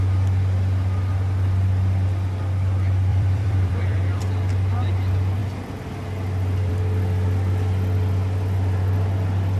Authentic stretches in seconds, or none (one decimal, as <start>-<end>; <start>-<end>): 0.0-3.1; 4.2-9.6